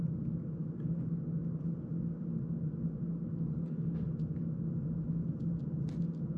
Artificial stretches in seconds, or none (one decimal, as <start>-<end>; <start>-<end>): none